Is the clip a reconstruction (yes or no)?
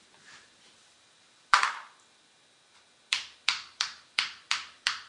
yes